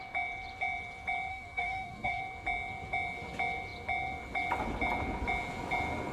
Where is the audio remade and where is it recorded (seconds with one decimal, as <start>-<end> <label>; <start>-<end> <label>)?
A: 0.0-1.3 recorded; 1.3-2.2 remade; 2.2-6.1 recorded